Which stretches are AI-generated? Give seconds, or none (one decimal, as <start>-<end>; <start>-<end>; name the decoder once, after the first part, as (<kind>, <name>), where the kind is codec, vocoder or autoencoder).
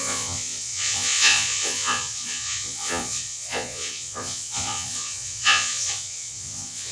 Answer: 0.0-6.9 (vocoder, Vocos)